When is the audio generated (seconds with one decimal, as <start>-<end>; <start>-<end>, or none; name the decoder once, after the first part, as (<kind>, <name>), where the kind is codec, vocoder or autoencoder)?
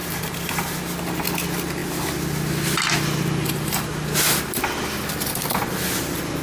0.0-0.8 (vocoder, BigVGAN v2)